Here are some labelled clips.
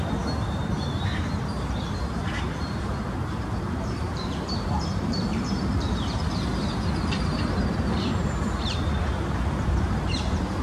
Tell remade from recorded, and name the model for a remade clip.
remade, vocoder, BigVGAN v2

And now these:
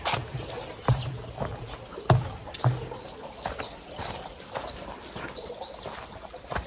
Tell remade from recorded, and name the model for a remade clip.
recorded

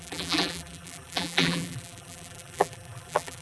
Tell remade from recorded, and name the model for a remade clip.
remade, vocoder, BigVGAN v2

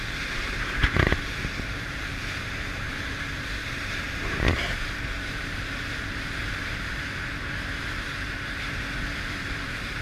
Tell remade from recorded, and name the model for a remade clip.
remade, vocoder, BigVGAN v2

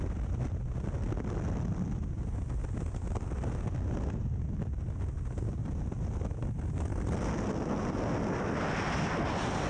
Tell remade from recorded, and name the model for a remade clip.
recorded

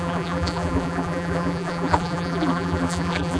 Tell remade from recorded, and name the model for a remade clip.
remade, vocoder, BigVGAN v2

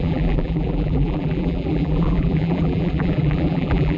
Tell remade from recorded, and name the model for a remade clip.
remade, vocoder, BigVGAN v2